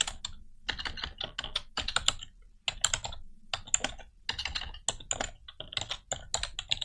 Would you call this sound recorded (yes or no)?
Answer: yes